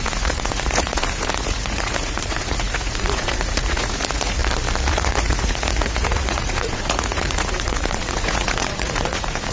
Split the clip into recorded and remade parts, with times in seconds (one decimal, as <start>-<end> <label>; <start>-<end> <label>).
0.0-4.4 remade; 4.4-4.9 recorded; 4.9-9.5 remade